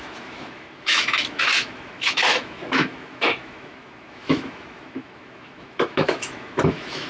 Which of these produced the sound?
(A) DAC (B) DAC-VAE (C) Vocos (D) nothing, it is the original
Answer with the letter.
B